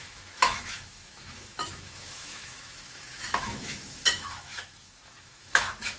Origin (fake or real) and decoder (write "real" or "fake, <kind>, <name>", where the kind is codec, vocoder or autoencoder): fake, autoencoder, DAC-VAE